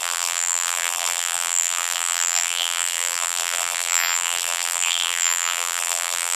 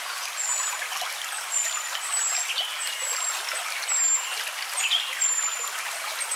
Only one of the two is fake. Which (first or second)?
first